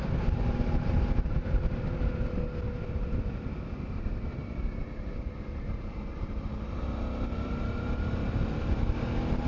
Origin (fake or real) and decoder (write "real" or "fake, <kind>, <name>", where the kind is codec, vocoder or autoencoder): real